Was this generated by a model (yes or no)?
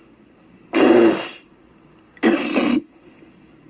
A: no